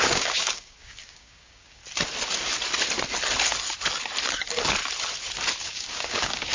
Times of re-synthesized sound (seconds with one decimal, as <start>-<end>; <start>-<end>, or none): 0.0-1.8; 5.7-6.5

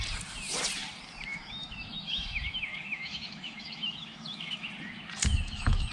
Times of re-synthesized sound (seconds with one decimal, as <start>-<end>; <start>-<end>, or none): 1.3-4.7; 5.3-5.9

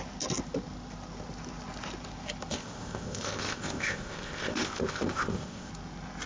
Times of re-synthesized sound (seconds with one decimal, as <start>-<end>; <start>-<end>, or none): 2.5-5.7

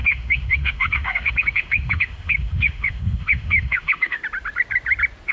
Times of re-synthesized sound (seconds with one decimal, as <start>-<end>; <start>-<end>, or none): 0.0-4.2

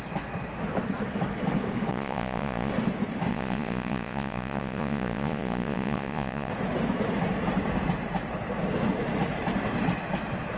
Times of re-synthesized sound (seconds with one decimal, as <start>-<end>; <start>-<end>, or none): 1.9-2.7; 3.3-6.5